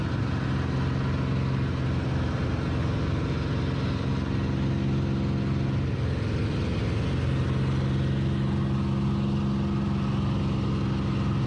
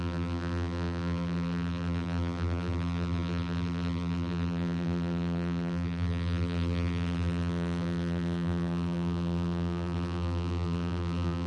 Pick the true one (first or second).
first